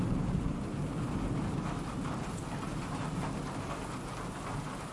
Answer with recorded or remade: recorded